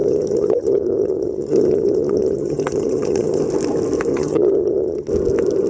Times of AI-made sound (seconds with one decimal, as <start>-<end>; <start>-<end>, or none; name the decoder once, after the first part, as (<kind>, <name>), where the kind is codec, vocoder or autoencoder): 0.0-3.4 (vocoder, HiFi-GAN); 4.1-5.1